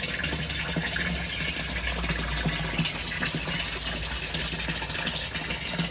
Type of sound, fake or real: real